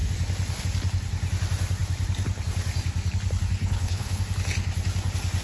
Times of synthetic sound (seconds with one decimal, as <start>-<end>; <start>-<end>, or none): 3.6-4.2